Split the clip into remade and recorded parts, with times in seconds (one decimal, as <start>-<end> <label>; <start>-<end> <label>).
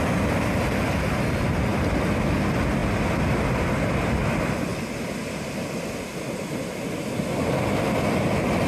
0.0-8.7 recorded